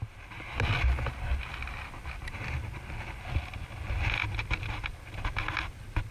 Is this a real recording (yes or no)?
yes